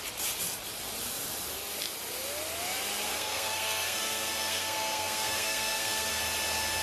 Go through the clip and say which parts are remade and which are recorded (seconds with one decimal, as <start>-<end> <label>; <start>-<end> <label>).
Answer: 0.0-3.1 recorded; 3.1-6.2 remade; 6.2-6.8 recorded